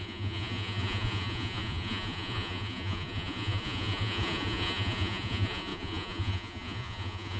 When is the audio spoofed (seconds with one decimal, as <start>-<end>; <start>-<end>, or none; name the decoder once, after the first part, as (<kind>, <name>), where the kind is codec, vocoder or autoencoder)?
0.0-7.4 (vocoder, Vocos)